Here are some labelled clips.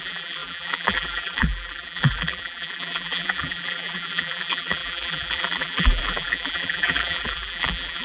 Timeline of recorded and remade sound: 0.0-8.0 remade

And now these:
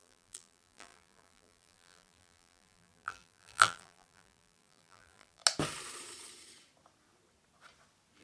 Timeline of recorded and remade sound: 0.0-5.4 remade; 5.4-8.2 recorded

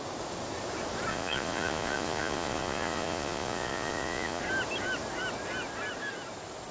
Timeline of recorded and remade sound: 0.0-1.1 recorded; 1.1-4.4 remade; 4.4-6.7 recorded

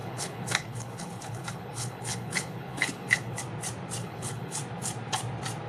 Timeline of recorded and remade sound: 0.0-3.4 remade; 3.4-4.0 recorded; 4.0-4.6 remade; 4.6-5.7 recorded